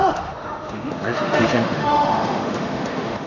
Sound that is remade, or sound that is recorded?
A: remade